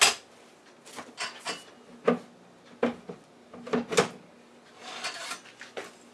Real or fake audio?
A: real